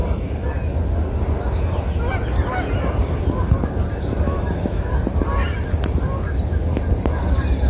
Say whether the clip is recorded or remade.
recorded